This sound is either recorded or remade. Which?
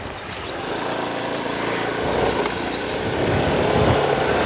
recorded